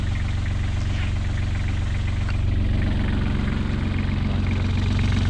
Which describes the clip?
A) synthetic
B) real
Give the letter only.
B